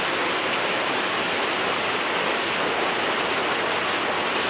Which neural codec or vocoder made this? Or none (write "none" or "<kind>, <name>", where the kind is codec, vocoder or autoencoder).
none